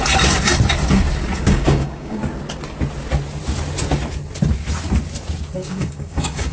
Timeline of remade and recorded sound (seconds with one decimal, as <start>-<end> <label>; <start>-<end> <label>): 0.0-1.4 recorded; 1.4-2.2 remade; 2.2-5.6 recorded; 5.6-6.5 remade